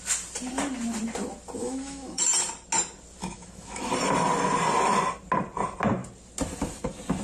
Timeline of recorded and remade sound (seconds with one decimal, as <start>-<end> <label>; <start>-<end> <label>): 0.0-1.6 recorded; 1.6-2.2 remade; 2.2-3.2 recorded; 3.2-3.9 remade; 3.9-7.2 recorded